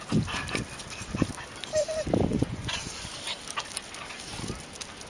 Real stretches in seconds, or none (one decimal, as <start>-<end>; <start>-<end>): 0.0-2.3; 3.1-5.1